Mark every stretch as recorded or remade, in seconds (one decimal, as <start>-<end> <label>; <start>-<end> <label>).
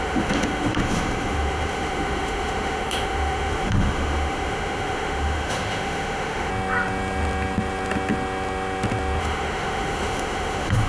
0.0-6.5 remade; 6.5-9.2 recorded; 9.2-10.9 remade